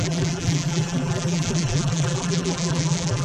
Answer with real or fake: fake